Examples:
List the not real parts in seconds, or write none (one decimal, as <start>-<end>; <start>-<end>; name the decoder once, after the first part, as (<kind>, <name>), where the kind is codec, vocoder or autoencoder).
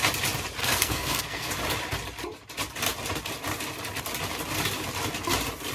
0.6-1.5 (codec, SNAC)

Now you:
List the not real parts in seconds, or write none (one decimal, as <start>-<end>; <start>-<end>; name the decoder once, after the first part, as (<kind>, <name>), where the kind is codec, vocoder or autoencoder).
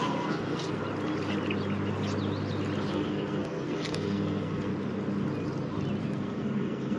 0.0-0.8 (codec, SNAC); 2.9-4.7; 6.0-7.0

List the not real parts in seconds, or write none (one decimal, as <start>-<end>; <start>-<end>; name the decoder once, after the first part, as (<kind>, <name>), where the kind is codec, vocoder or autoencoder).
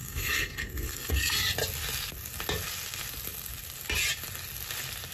0.0-1.4 (codec, SNAC)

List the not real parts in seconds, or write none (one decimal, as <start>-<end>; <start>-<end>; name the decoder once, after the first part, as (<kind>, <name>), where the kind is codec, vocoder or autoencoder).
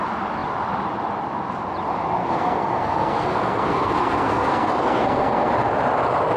2.2-5.5 (codec, SNAC)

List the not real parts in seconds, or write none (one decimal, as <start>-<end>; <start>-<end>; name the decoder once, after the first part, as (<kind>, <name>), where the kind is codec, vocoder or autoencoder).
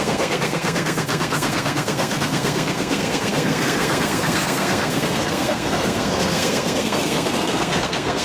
0.0-8.2 (codec, SNAC)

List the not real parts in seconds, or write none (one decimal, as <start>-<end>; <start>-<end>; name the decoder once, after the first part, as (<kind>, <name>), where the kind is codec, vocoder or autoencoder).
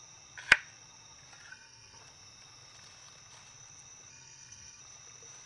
1.5-2.0 (codec, SNAC); 4.1-4.8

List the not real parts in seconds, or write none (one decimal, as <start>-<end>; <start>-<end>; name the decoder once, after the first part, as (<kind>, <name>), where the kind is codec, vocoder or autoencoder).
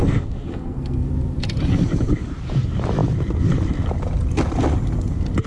0.0-1.1 (codec, SNAC)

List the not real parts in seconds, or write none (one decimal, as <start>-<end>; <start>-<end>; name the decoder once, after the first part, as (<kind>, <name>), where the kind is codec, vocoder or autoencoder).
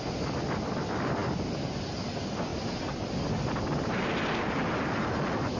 none